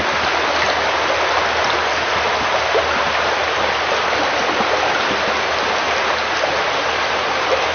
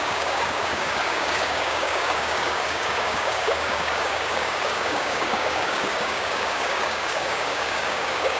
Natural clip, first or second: first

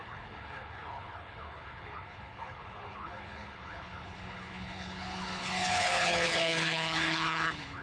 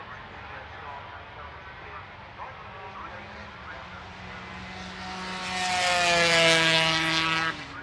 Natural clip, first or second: second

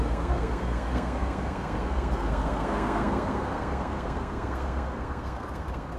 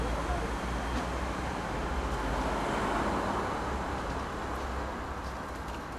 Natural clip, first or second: second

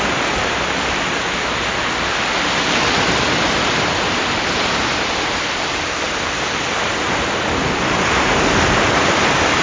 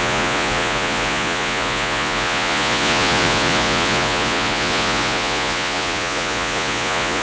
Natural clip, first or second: first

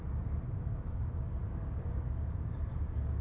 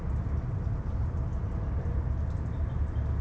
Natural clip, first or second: second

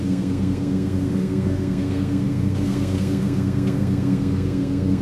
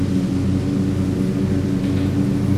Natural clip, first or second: second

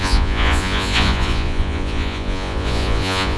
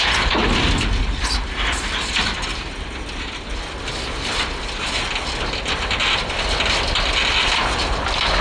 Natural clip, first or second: second